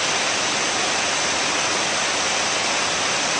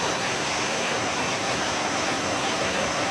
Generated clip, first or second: second